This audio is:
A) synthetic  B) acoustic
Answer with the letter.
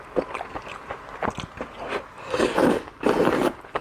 B